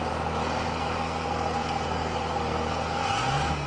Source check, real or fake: fake